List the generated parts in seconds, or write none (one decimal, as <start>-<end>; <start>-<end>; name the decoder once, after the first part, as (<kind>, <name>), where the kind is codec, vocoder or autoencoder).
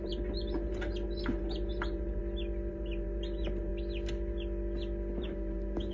0.0-2.2 (vocoder, BigVGAN v2); 2.7-3.7; 5.2-5.9